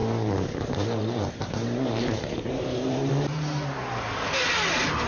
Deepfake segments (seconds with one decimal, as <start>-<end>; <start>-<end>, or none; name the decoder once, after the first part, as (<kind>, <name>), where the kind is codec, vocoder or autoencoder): 0.0-3.1 (vocoder, BigVGAN v2)